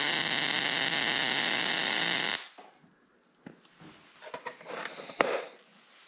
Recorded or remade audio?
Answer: recorded